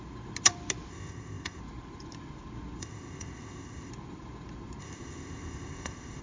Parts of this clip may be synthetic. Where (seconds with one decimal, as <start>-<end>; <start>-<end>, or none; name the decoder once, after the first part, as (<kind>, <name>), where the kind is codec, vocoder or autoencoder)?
0.9-1.6 (codec, ZipCodec); 2.8-3.9; 4.8-6.2